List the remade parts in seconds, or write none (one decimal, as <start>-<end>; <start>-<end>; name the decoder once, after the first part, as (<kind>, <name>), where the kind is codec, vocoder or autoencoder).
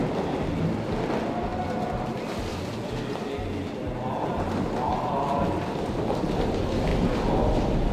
2.5-3.0 (vocoder, Vocos)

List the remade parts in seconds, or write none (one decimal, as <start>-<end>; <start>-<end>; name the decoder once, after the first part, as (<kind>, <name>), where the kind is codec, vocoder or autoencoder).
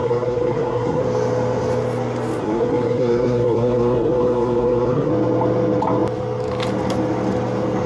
0.0-1.0 (codec, SNAC); 2.4-5.1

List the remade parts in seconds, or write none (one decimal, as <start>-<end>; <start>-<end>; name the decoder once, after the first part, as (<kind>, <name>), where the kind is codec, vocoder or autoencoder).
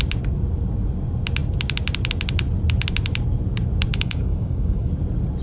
3.9-4.9 (codec, DAC)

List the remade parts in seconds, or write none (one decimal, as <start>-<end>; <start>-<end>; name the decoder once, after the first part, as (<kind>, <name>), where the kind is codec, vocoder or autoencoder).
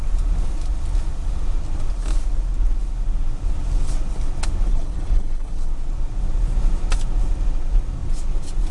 4.7-5.7 (codec, HILCodec)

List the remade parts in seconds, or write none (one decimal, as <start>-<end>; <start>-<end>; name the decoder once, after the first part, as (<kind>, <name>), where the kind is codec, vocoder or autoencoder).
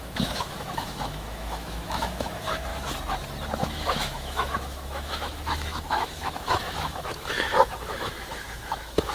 0.0-2.7 (autoencoder, DAC-VAE); 3.6-9.1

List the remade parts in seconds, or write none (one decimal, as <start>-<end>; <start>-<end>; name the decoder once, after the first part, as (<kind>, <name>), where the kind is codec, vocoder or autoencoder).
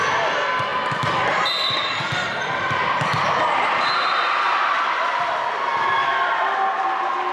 0.7-3.8 (vocoder, BigVGAN v2); 6.0-6.6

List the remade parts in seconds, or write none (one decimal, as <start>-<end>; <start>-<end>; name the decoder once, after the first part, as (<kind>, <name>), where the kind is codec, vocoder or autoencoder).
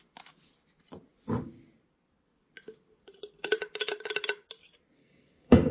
5.0-5.7 (codec, SNAC)